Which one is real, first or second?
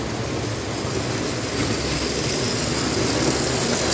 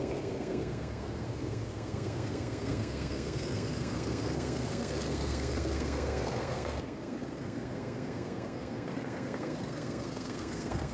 first